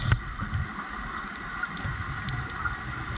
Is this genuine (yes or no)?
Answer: yes